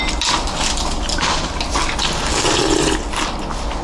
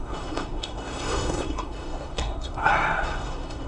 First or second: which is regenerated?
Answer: second